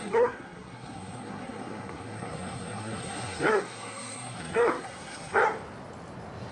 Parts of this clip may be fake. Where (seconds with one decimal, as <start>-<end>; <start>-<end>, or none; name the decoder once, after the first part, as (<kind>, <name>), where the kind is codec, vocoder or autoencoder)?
0.0-5.4 (codec, SNAC)